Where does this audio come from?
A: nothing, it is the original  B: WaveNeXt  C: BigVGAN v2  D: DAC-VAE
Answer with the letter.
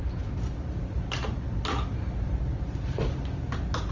A